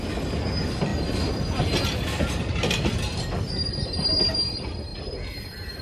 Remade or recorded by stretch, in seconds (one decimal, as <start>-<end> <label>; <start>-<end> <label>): 0.0-4.9 recorded; 4.9-5.8 remade